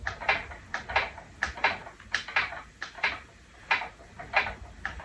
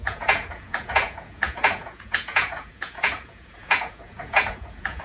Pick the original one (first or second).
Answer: first